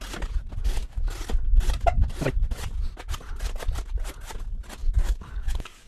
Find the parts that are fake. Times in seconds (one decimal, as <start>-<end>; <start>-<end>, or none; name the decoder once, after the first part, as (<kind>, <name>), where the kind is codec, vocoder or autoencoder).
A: 0.6-1.1 (codec, DAC); 4.8-5.9